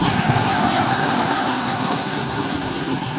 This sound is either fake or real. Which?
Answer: fake